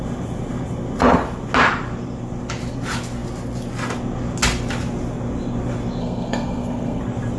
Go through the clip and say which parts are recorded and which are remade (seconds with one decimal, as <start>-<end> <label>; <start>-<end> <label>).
0.0-6.0 recorded; 6.0-7.0 remade; 7.0-7.4 recorded